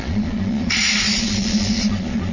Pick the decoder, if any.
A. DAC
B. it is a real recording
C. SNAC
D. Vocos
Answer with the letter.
D